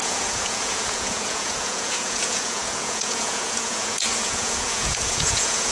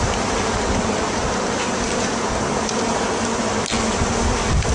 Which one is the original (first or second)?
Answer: second